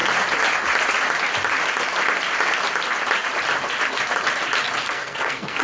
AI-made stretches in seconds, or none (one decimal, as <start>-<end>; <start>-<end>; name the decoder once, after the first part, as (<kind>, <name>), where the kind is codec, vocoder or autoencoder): 4.8-5.6 (codec, SNAC)